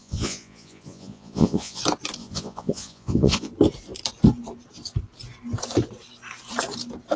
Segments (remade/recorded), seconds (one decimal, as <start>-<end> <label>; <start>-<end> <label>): 0.0-1.8 remade; 1.8-2.2 recorded; 2.2-3.5 remade; 3.5-7.2 recorded

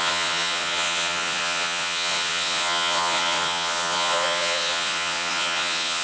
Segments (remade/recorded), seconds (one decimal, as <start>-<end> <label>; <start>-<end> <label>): 0.0-6.0 remade

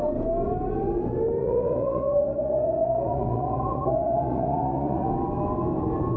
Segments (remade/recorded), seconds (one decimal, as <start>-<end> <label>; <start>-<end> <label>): 0.0-1.4 recorded; 1.4-5.1 remade; 5.1-6.2 recorded